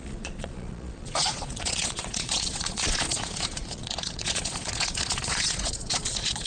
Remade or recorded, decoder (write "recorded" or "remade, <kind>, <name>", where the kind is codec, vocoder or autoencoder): remade, vocoder, Vocos